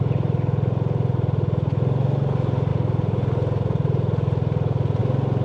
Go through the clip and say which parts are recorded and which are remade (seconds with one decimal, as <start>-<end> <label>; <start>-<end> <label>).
0.0-5.4 recorded